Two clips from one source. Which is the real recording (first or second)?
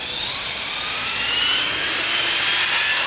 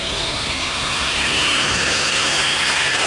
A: first